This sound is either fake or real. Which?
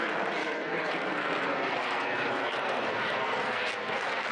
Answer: fake